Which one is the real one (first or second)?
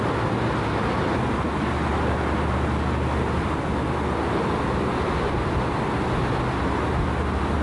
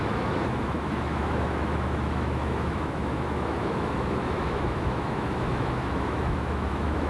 first